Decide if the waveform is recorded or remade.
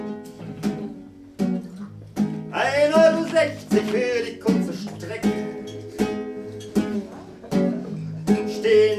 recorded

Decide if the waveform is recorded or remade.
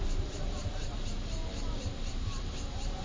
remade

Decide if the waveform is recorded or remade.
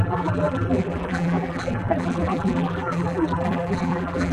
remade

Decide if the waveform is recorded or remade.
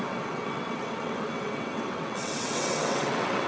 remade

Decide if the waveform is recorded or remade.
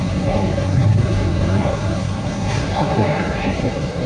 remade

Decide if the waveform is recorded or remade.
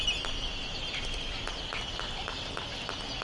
recorded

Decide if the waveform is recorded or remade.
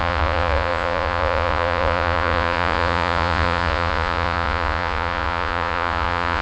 remade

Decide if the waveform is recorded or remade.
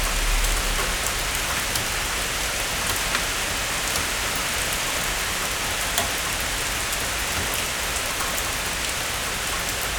recorded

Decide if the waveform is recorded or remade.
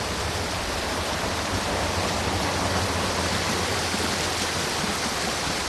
recorded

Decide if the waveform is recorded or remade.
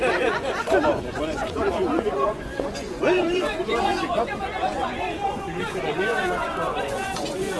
remade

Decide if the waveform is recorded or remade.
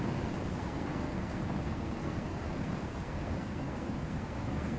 remade